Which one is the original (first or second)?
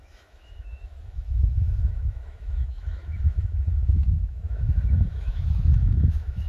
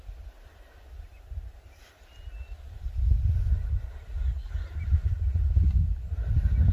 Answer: second